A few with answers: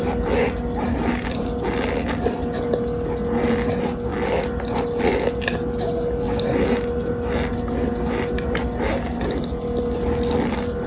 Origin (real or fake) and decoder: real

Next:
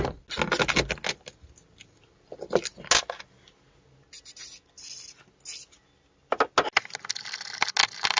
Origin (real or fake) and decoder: real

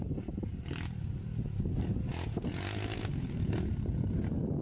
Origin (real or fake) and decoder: real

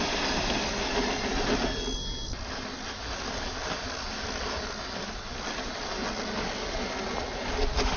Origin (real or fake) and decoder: real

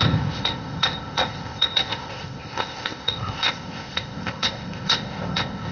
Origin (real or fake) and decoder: fake, codec, ZipCodec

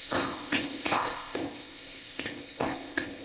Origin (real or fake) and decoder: fake, codec, ZipCodec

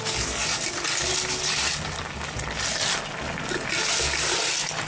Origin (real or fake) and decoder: real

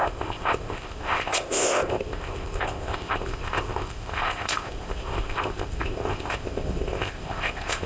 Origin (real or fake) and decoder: fake, codec, ZipCodec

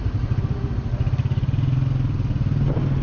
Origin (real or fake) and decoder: real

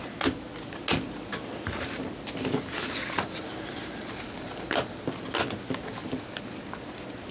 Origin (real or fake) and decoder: real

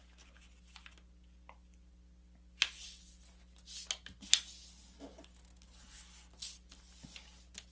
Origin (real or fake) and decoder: real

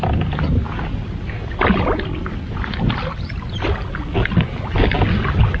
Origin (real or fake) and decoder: real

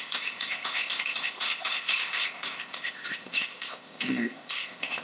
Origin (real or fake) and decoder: fake, codec, ZipCodec